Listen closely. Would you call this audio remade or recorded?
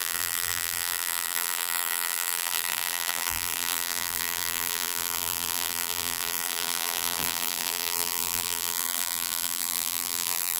remade